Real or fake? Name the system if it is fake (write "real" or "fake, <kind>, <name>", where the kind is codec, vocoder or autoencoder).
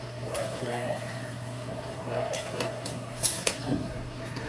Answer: fake, codec, SNAC